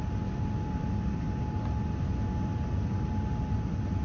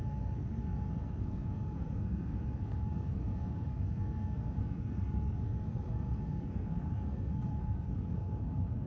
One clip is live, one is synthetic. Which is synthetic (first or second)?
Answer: second